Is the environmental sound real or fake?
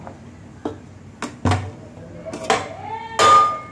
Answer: real